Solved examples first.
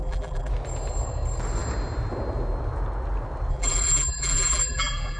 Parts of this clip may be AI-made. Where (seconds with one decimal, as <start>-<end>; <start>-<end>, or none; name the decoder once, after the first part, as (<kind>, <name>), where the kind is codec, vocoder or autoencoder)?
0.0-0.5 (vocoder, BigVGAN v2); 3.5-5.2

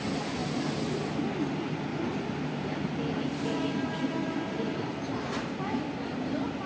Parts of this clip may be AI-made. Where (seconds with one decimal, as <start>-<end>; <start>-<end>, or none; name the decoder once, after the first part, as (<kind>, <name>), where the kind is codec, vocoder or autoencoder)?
1.9-5.8 (vocoder, BigVGAN v2)

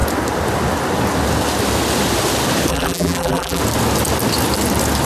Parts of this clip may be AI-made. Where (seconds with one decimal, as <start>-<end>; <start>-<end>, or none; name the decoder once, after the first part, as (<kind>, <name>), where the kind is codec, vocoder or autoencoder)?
2.7-3.6 (vocoder, BigVGAN v2)